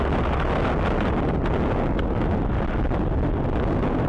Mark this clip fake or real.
real